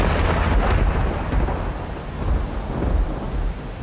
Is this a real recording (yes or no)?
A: yes